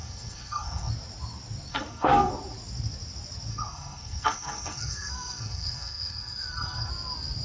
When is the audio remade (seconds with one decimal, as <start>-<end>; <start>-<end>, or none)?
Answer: 0.0-0.9; 1.7-2.3; 3.5-6.9